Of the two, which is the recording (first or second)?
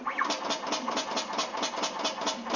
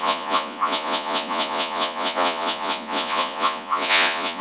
first